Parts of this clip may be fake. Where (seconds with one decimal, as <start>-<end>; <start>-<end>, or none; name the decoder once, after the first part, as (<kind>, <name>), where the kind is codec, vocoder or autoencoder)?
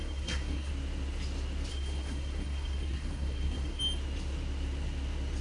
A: 0.0-0.7 (codec, SNAC); 1.7-3.8